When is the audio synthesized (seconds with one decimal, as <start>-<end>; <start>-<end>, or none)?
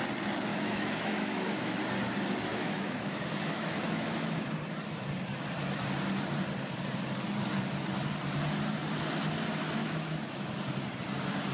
0.5-1.8; 2.5-4.4; 9.8-10.5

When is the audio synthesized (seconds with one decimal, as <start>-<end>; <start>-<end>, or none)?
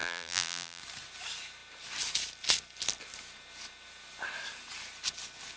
0.0-0.8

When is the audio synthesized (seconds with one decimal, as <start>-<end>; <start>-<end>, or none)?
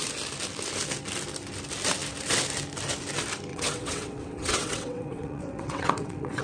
3.5-6.4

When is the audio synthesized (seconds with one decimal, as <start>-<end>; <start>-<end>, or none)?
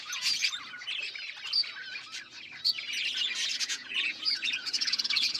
0.0-0.4; 3.6-5.4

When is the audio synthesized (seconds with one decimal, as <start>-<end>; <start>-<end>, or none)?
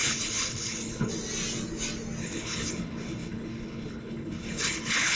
0.0-1.1; 2.2-5.2